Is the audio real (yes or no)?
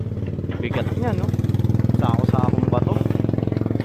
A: yes